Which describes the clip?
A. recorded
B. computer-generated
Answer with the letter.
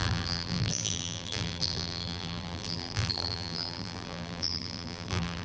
B